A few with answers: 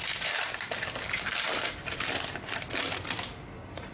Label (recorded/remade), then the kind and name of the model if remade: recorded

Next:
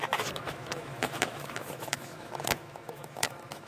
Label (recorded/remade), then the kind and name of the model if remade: remade, autoencoder, DAC-VAE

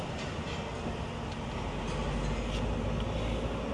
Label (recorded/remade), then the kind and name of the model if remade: recorded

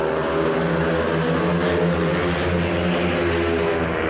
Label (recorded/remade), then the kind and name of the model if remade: recorded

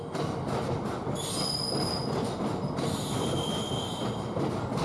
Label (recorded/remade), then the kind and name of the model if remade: recorded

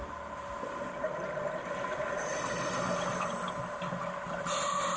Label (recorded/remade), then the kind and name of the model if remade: recorded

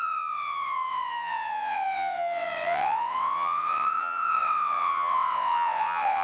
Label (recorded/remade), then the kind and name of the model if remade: remade, vocoder, WaveNeXt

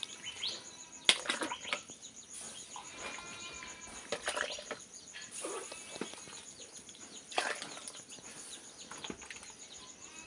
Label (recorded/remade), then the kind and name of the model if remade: recorded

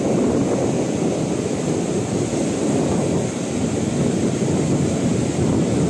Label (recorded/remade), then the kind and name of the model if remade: recorded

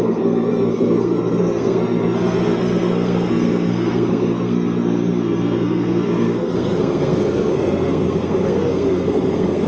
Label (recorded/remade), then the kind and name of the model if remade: remade, codec, SNAC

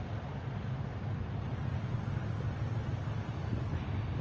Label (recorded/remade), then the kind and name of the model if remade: recorded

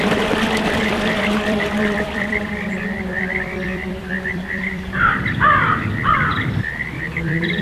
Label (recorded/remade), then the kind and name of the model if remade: remade, vocoder, BigVGAN v2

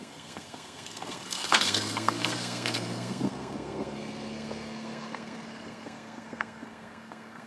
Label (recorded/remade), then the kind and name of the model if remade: remade, codec, SNAC